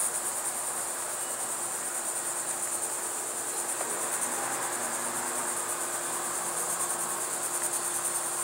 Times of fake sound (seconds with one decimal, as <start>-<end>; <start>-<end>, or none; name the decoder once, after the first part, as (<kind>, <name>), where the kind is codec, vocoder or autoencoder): none